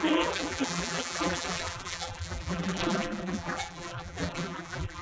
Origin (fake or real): fake